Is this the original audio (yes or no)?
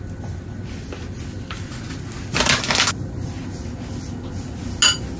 yes